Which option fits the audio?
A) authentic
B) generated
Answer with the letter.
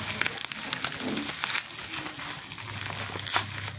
A